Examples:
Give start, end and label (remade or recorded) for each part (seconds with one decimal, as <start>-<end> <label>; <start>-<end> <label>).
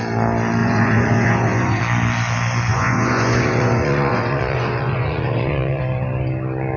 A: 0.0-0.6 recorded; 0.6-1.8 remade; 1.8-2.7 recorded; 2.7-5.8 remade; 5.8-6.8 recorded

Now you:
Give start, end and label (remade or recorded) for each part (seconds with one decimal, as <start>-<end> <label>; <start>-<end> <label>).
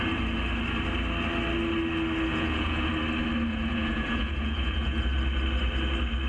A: 0.0-2.3 recorded; 2.3-2.9 remade; 2.9-3.5 recorded; 3.5-5.0 remade; 5.0-6.3 recorded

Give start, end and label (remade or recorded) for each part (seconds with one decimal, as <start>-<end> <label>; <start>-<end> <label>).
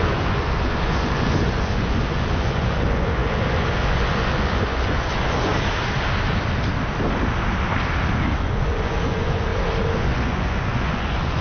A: 0.0-5.5 remade; 5.5-8.4 recorded; 8.4-9.5 remade; 9.5-10.0 recorded; 10.0-11.4 remade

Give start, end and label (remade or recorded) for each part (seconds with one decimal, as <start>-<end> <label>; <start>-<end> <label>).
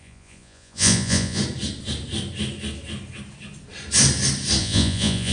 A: 0.0-1.4 remade; 1.4-4.6 recorded; 4.6-5.3 remade